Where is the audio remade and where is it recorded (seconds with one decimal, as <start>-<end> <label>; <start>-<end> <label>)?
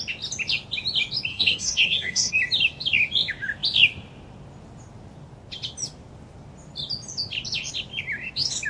0.0-1.3 recorded; 1.3-2.3 remade; 2.3-8.7 recorded